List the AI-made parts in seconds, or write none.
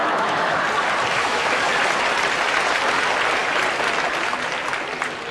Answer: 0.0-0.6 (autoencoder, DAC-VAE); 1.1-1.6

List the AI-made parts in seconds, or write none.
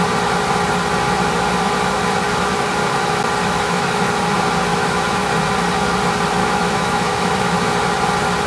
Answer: 3.4-4.0 (autoencoder, DAC-VAE); 4.7-5.3; 6.4-7.5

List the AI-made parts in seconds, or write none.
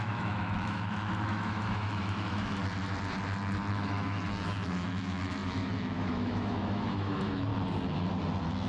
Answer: 0.0-2.6 (autoencoder, DAC-VAE); 3.7-7.5